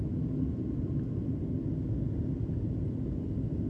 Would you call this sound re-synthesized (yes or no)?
no